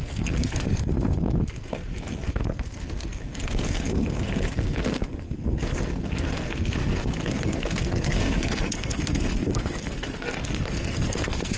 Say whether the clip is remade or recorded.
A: remade